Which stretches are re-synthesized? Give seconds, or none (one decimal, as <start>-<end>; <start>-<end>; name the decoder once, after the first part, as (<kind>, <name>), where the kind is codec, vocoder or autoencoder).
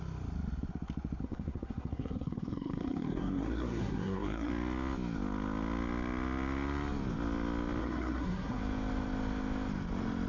1.2-4.5 (codec, SNAC); 7.8-8.6